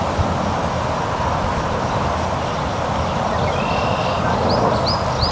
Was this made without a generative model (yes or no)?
yes